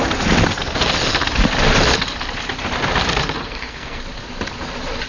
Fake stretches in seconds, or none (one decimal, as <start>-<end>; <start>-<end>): 3.4-4.0